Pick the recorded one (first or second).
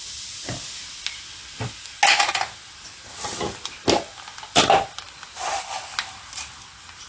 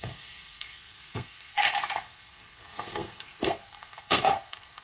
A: first